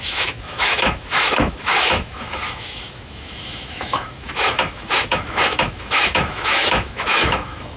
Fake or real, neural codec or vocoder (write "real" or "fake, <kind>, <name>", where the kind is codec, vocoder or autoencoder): fake, autoencoder, DAC-VAE